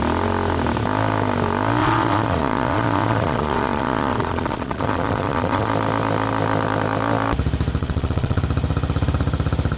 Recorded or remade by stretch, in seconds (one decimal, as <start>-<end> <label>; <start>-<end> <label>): 0.0-1.8 recorded; 1.8-5.7 remade; 5.7-7.8 recorded; 7.8-8.4 remade; 8.4-9.8 recorded